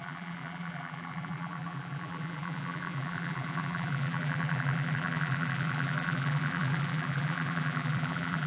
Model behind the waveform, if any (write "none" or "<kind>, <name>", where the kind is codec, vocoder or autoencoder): vocoder, BigVGAN v2